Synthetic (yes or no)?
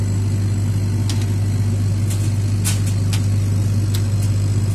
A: no